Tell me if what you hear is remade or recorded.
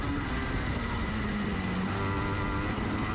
recorded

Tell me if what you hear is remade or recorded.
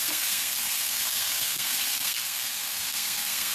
remade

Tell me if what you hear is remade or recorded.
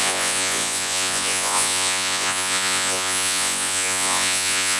remade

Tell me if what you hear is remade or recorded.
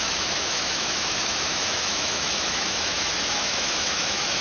remade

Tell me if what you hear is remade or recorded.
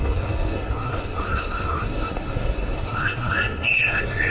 remade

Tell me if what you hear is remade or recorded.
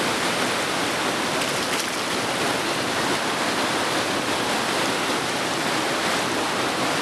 recorded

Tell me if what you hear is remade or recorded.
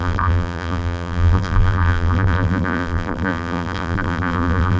remade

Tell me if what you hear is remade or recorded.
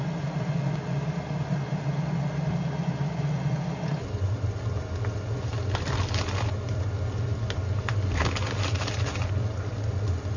recorded